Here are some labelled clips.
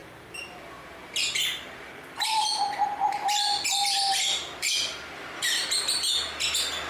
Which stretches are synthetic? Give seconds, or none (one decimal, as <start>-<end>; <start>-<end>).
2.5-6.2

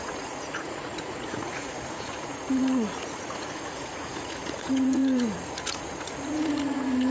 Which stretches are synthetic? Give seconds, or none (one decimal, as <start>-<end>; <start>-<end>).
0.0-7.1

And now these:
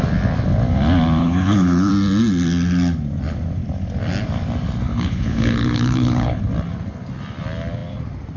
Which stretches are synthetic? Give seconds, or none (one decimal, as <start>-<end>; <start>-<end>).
1.2-1.9; 4.9-6.4

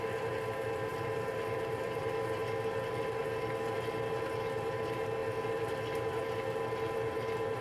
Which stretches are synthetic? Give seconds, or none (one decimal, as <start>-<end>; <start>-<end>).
0.9-2.0; 5.2-6.2

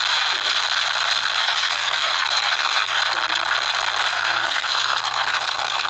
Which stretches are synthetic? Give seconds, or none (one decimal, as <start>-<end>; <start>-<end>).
1.4-3.0; 4.1-5.9

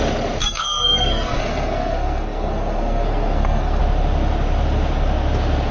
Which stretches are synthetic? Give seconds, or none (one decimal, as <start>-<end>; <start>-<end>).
0.4-3.8